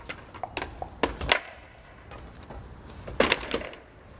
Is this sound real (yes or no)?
yes